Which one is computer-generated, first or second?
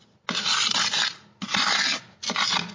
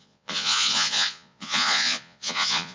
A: second